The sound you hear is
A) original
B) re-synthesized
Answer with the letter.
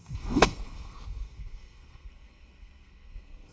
B